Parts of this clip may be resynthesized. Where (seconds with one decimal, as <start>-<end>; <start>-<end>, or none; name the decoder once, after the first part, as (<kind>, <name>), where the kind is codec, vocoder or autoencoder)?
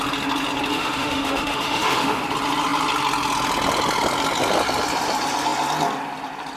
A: 0.7-2.2 (autoencoder, DAC-VAE)